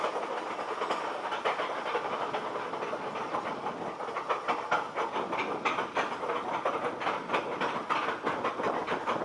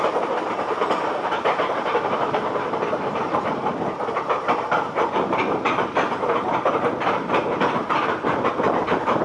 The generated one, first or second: second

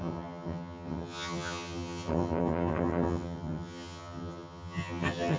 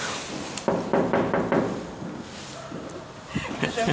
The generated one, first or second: first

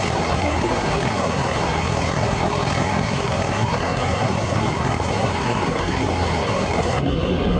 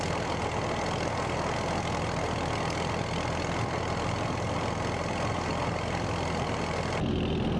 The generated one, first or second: first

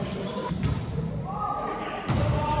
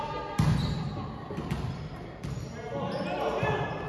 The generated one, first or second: first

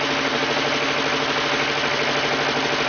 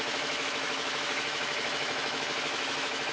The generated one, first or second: second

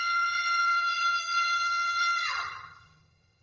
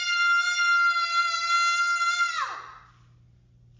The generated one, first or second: first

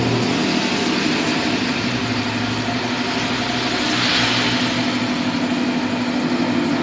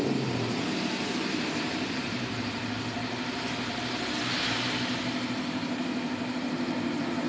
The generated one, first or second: second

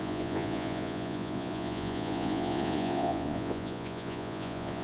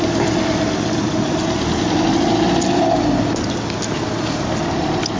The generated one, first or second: first